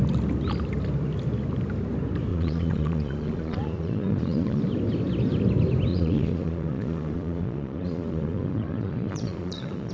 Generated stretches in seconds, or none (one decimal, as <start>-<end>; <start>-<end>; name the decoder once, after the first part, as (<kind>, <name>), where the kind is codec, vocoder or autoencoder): 2.3-4.6 (vocoder, Vocos); 5.9-9.9